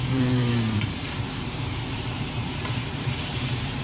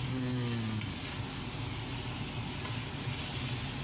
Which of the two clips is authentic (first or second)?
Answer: second